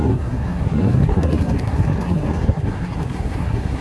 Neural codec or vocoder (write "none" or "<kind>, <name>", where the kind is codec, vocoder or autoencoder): codec, SNAC